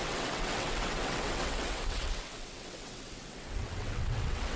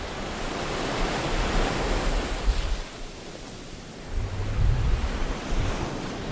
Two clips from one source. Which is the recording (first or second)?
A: second